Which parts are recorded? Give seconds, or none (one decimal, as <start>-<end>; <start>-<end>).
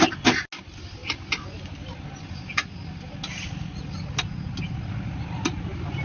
0.0-6.0